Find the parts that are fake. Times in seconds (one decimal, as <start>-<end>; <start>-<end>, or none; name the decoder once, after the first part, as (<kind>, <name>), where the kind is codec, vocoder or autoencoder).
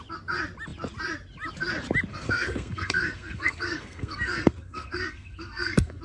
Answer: 2.1-6.0 (codec, SNAC)